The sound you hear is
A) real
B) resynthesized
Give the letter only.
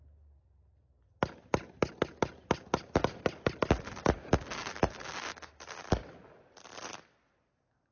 A